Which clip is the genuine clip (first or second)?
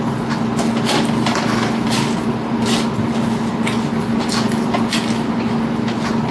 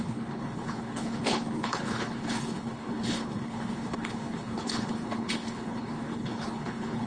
first